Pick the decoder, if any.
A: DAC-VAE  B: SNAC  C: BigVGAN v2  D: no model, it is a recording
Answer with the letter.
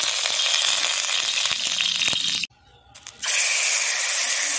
D